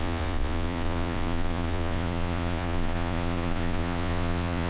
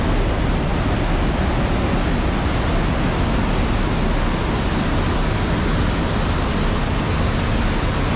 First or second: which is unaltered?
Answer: second